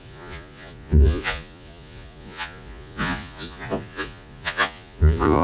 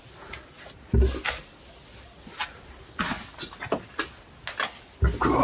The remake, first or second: first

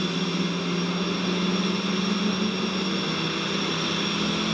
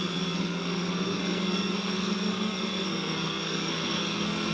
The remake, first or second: second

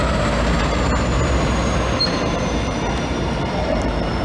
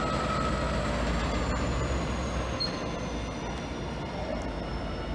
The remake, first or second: first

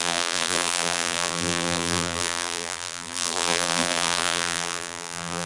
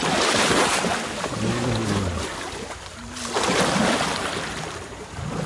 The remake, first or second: first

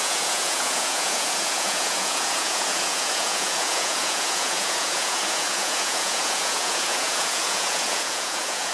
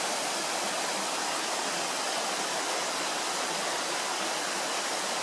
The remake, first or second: first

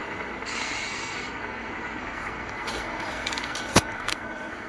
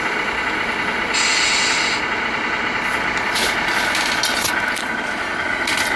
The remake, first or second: first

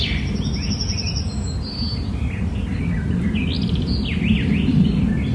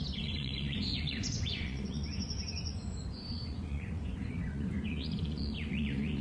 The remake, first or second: second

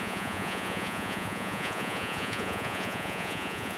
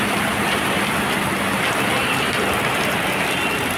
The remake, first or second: first